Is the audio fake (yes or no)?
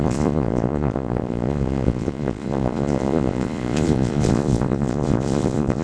yes